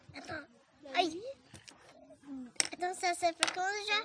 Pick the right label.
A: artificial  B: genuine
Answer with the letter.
B